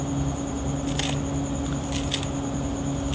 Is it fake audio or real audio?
real